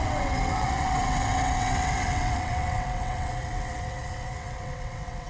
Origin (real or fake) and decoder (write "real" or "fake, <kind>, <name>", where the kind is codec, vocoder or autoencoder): fake, vocoder, WaveNeXt